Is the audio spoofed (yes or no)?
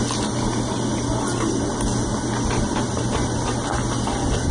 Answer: no